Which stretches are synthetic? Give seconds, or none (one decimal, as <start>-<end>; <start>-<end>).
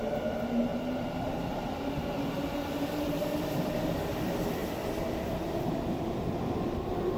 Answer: 0.7-3.7